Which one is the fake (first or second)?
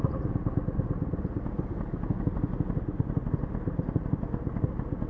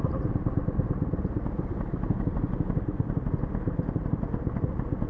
second